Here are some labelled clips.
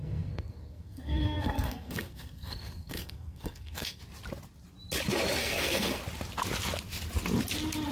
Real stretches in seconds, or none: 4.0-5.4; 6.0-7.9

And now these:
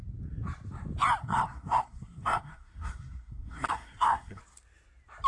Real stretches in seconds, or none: 0.0-1.2; 4.4-5.3